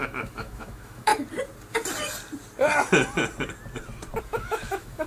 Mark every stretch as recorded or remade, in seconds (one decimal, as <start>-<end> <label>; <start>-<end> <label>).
0.0-1.1 remade; 1.1-4.2 recorded; 4.2-5.1 remade